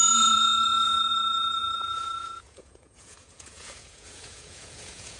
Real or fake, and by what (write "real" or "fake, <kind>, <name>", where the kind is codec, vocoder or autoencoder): fake, vocoder, Vocos